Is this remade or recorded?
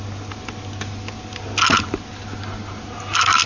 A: recorded